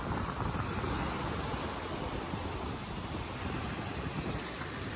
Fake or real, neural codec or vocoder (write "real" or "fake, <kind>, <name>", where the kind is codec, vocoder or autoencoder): real